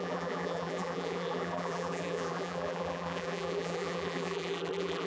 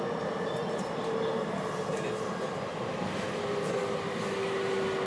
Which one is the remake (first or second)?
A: first